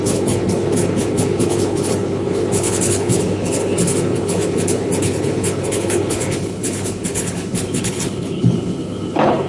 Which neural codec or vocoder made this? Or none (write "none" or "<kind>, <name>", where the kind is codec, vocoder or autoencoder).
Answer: codec, HILCodec